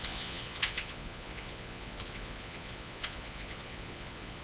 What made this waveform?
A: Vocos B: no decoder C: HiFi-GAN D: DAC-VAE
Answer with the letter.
A